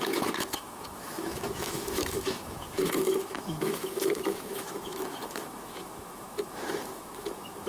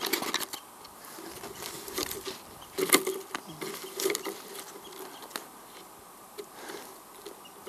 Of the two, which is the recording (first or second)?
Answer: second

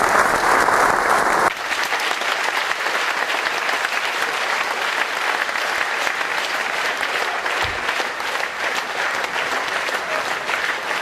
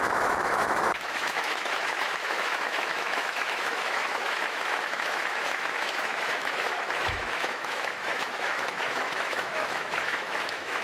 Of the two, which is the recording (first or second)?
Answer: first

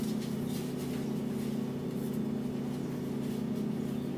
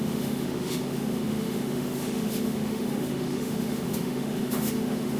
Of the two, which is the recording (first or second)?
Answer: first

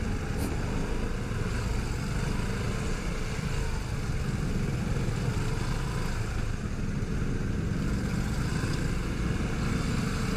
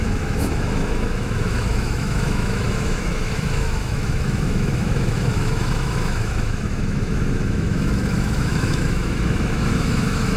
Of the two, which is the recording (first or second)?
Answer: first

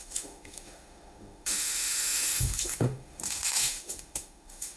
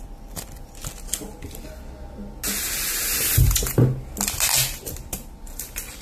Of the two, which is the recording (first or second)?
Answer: second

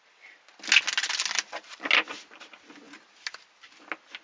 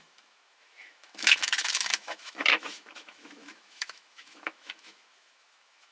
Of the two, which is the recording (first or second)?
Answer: first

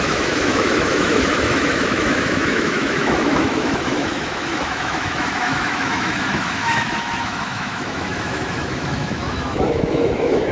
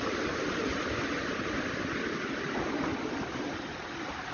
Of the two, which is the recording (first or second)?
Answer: second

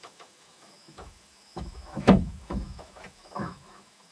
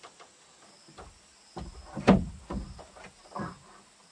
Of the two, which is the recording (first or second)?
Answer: second